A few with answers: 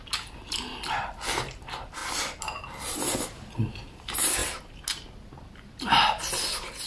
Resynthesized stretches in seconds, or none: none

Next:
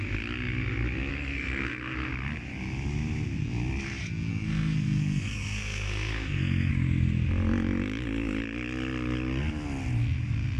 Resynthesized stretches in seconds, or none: 1.1-2.1 (codec, SNAC); 4.3-6.7

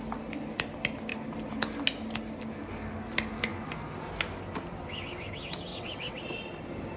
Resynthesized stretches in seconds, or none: 5.7-6.4 (vocoder, WaveNeXt)

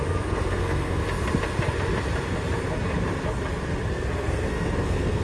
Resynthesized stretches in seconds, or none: 0.0-1.0 (codec, SNAC); 3.9-5.2